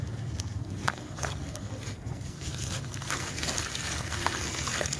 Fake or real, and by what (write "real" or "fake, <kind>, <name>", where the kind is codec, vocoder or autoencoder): fake, codec, SNAC